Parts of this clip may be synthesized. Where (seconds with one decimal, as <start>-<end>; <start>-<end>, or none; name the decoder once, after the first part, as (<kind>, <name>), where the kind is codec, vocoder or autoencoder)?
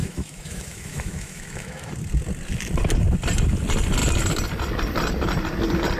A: 0.0-1.9 (autoencoder, DAC-VAE)